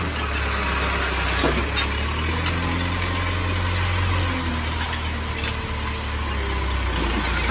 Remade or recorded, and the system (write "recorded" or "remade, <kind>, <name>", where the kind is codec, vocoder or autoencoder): recorded